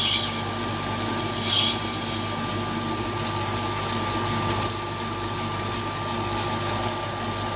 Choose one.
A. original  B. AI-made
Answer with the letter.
A